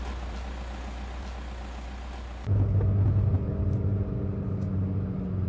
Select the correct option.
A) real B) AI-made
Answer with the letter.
A